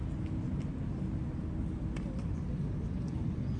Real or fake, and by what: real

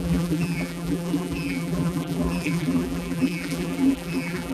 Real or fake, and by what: fake, vocoder, BigVGAN v2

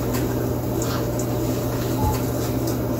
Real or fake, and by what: real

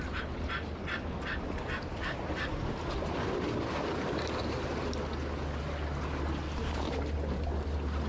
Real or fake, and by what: real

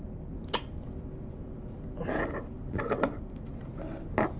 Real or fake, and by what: real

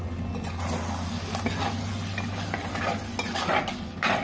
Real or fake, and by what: real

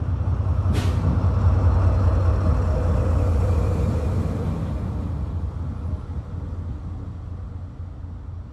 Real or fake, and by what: real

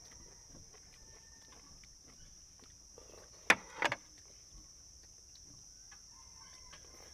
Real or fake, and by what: real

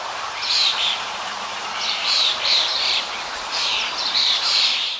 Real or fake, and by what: fake, vocoder, BigVGAN v2